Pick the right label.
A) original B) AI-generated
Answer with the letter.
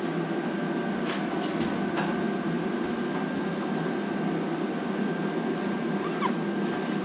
A